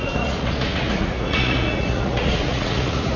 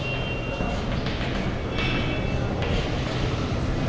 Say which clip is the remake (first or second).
first